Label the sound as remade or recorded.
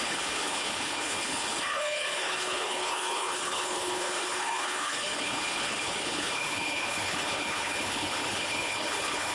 remade